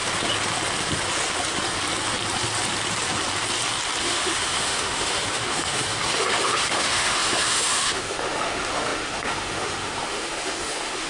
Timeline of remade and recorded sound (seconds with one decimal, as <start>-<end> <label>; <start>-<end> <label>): 0.0-4.0 recorded; 4.0-11.1 remade